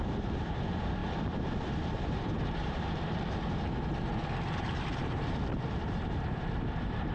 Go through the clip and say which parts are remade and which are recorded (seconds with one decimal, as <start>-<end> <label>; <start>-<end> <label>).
0.0-4.1 remade; 4.1-4.6 recorded; 4.6-7.1 remade

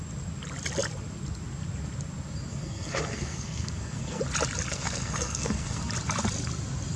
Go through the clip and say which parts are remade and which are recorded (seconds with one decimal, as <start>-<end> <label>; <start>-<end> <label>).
0.0-2.5 recorded; 2.5-4.2 remade; 4.2-4.7 recorded; 4.7-5.8 remade; 5.8-7.0 recorded

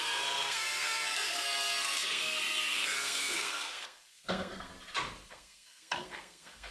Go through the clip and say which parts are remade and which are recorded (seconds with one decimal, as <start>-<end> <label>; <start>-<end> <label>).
0.0-4.7 remade; 4.7-5.3 recorded; 5.3-6.7 remade

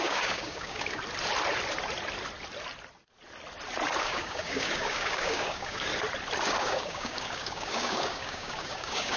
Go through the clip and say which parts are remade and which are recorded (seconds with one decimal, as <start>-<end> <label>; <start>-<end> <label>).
0.0-1.0 remade; 1.0-4.0 recorded; 4.0-5.9 remade; 5.9-6.6 recorded; 6.6-9.2 remade